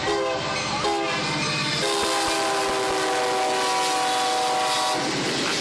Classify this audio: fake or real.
real